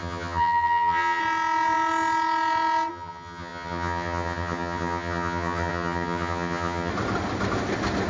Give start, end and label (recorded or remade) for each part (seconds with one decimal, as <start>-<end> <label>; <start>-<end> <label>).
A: 0.0-1.2 remade; 1.2-2.9 recorded; 2.9-6.9 remade; 6.9-8.1 recorded